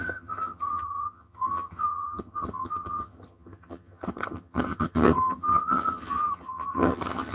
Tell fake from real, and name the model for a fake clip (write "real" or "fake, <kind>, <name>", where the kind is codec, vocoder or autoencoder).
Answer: fake, vocoder, HiFi-GAN